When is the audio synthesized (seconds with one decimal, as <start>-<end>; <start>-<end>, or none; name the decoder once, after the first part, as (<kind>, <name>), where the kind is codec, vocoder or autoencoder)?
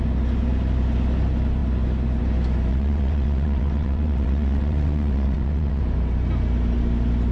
2.7-5.8 (vocoder, WaveNeXt)